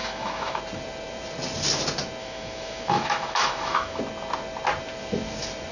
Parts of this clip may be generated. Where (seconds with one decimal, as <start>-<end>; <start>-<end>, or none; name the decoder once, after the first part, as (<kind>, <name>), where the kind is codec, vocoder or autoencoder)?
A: 0.0-0.6 (autoencoder, DAC-VAE); 2.2-4.0